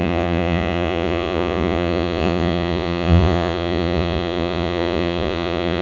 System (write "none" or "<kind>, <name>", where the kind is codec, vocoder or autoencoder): vocoder, Vocos